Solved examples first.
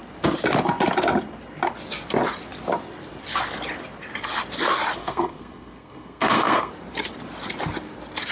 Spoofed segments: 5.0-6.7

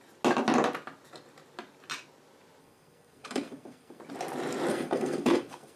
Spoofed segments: 2.6-4.0; 4.7-5.8

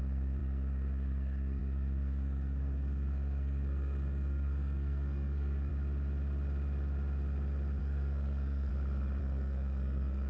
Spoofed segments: 0.0-5.7; 7.8-8.7; 9.2-10.3

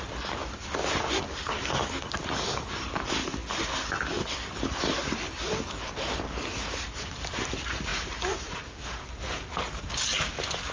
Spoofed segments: none